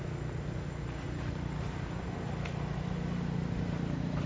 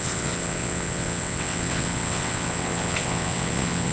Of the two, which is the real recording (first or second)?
first